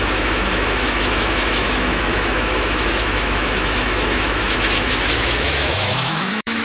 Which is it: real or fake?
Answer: fake